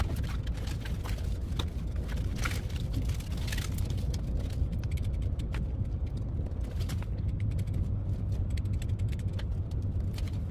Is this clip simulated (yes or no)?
no